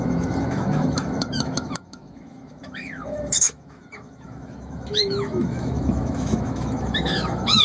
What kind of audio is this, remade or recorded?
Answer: remade